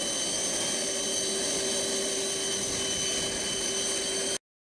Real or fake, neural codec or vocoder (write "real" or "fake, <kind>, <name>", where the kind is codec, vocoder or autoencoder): real